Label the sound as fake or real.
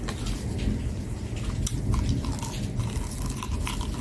real